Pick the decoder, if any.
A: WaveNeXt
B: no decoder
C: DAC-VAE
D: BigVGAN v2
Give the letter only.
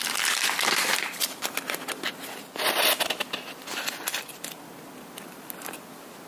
B